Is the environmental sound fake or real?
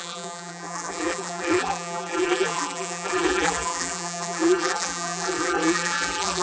fake